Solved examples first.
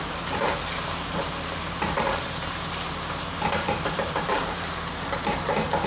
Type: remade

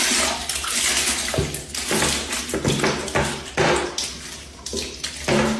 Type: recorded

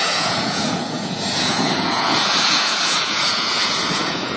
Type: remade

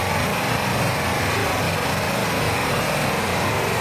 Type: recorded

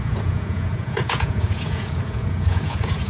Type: remade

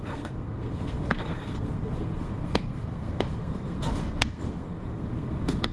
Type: remade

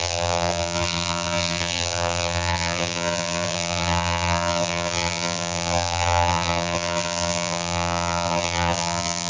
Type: remade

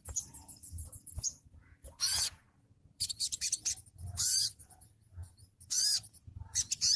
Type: remade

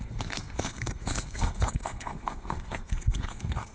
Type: remade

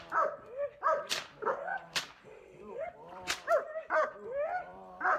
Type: remade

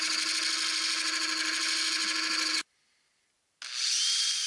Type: recorded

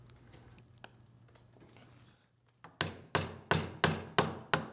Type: recorded